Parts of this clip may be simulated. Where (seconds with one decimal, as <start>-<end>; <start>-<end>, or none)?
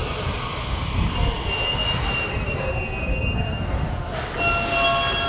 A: none